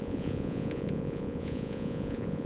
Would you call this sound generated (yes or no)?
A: yes